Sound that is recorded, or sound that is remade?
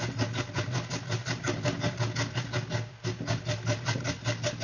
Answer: recorded